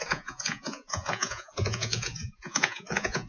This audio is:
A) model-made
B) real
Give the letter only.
A